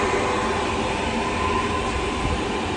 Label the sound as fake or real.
real